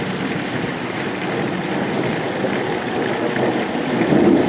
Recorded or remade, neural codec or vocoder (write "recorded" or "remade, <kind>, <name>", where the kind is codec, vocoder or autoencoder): recorded